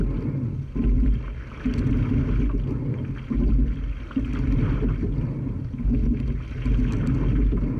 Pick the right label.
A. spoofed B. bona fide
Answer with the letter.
B